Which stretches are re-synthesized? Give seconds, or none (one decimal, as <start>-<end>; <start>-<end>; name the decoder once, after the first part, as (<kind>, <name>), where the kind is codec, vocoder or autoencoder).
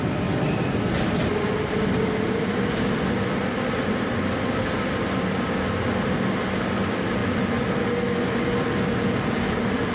none